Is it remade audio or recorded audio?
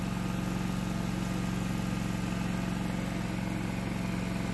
recorded